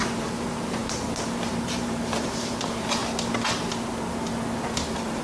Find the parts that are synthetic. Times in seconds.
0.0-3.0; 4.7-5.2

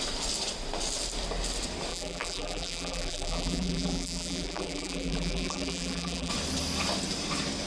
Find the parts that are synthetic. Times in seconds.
1.9-6.3

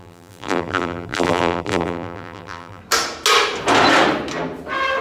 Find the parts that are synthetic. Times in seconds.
0.0-2.8

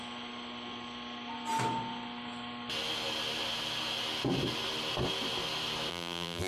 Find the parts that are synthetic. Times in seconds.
5.9-6.5

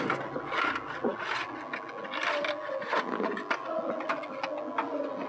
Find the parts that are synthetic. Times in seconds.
none